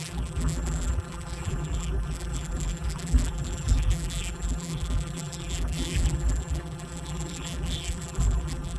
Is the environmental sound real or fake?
fake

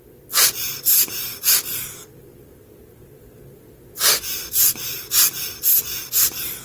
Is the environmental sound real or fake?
real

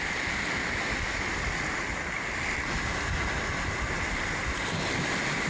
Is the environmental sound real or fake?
real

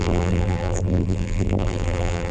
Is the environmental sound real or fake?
fake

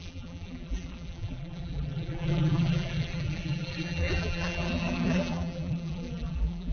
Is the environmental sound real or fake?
fake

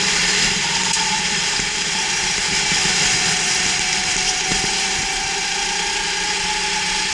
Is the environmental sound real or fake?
real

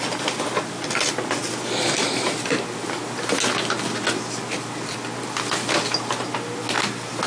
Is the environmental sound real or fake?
real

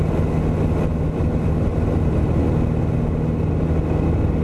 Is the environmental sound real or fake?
real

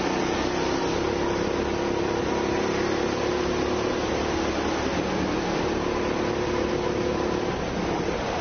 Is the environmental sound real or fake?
real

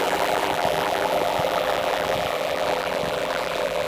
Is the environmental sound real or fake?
fake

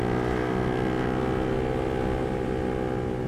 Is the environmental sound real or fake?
real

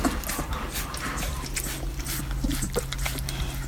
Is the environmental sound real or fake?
real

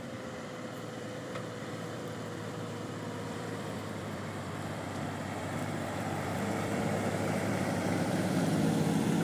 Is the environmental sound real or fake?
fake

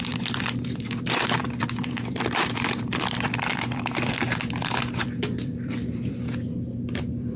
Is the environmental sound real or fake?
fake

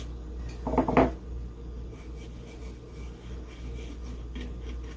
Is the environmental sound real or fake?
real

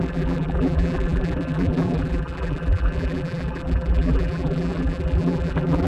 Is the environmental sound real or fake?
fake